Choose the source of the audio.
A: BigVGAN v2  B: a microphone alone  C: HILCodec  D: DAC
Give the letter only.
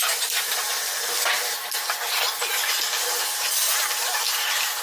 B